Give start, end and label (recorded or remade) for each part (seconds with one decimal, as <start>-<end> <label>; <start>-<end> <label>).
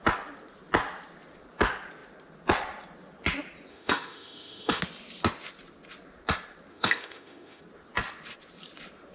0.0-3.7 recorded; 3.7-4.8 remade; 4.8-6.7 recorded; 6.7-7.6 remade; 7.6-9.1 recorded